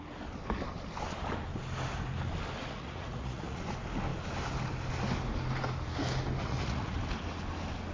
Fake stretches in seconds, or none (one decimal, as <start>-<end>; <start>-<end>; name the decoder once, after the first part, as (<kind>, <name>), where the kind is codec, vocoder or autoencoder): 2.6-3.6 (vocoder, Vocos); 6.4-7.0